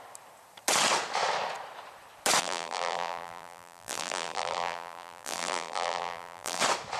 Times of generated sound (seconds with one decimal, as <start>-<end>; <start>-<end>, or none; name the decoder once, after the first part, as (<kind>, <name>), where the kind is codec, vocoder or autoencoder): 2.4-6.6 (vocoder, BigVGAN v2)